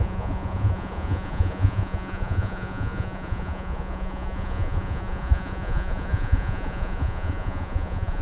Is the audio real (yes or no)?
no